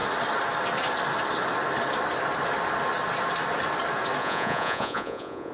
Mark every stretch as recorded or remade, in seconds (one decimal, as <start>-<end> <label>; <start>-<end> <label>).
0.0-4.2 recorded; 4.2-5.5 remade